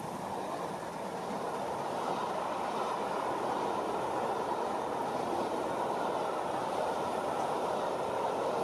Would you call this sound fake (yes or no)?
no